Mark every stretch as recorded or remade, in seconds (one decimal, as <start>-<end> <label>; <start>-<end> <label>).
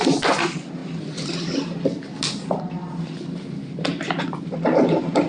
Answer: 0.0-5.3 recorded